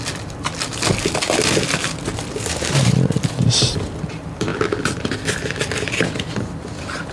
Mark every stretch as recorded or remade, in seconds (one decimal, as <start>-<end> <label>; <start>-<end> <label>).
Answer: 0.0-0.7 remade; 0.7-3.6 recorded; 3.6-7.1 remade